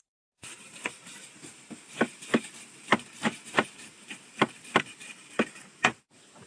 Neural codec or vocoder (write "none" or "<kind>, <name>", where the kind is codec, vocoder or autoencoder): vocoder, BigVGAN v2